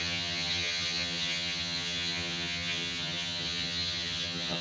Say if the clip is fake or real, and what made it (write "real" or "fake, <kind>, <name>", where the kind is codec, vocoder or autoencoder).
fake, vocoder, HiFi-GAN